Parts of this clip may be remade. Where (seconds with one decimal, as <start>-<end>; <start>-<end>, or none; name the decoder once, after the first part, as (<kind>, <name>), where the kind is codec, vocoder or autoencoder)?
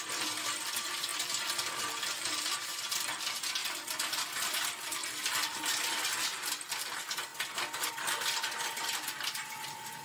0.0-1.1 (vocoder, BigVGAN v2); 1.8-7.3; 7.9-10.0